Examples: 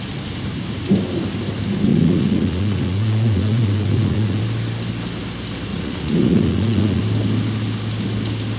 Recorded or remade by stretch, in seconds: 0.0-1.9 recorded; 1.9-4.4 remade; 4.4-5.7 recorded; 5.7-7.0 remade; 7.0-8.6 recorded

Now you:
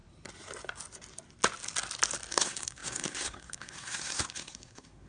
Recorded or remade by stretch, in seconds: 0.0-2.3 recorded; 2.3-5.1 remade

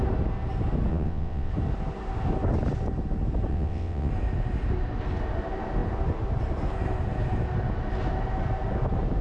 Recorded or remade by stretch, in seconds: 0.0-0.9 recorded; 0.9-1.5 remade; 1.5-3.5 recorded; 3.5-4.1 remade; 4.1-9.2 recorded

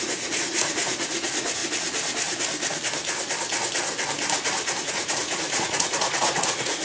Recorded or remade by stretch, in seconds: 0.0-1.6 remade; 1.6-4.8 recorded; 4.8-6.8 remade

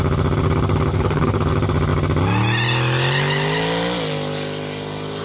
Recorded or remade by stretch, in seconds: 0.0-0.9 recorded; 0.9-1.5 remade; 1.5-5.2 recorded